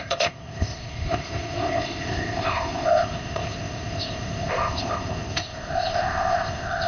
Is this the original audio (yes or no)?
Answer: no